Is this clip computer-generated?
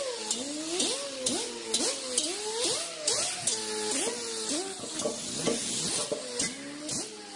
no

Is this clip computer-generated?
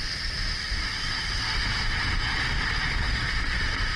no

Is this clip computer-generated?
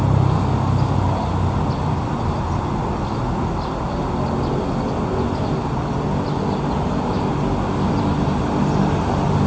no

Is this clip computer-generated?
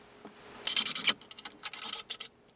no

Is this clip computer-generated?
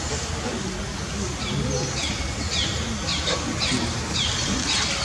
no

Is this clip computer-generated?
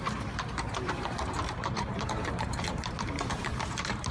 yes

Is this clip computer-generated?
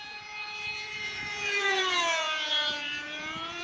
yes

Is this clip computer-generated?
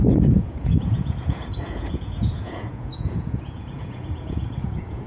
yes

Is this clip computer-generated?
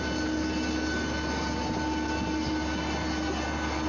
no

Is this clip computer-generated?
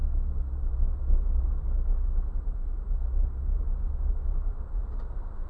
no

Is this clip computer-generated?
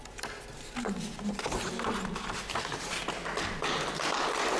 no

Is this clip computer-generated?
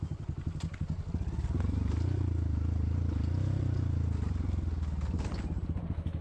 no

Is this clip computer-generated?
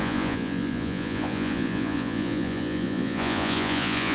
yes